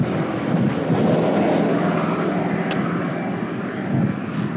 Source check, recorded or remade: recorded